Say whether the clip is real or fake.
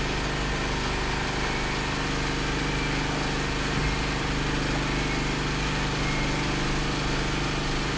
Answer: real